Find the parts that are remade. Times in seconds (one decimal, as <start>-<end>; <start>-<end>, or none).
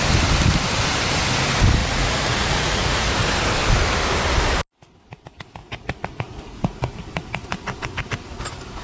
1.8-3.1; 5.6-7.0